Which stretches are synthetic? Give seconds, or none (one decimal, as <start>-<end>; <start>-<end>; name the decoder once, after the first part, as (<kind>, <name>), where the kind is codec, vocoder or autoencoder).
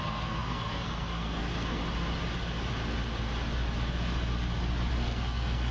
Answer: 0.0-1.8 (codec, SNAC); 4.9-5.7